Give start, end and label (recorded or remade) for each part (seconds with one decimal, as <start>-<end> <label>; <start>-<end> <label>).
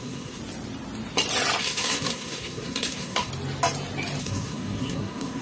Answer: 0.0-0.4 remade; 0.4-1.6 recorded; 1.6-3.3 remade; 3.3-4.2 recorded; 4.2-5.4 remade